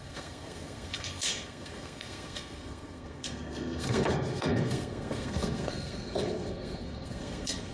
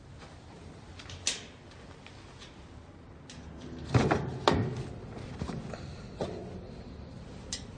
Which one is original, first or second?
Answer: second